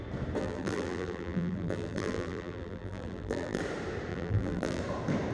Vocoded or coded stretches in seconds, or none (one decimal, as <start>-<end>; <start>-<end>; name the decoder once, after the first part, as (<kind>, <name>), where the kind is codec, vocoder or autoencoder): 0.4-3.6 (vocoder, BigVGAN v2); 4.1-4.8